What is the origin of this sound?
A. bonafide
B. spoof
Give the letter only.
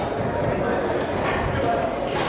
B